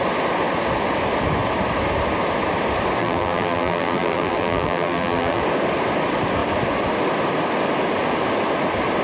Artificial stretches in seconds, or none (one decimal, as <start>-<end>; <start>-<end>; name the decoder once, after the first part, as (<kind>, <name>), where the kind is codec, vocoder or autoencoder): 3.0-5.4 (vocoder, BigVGAN v2)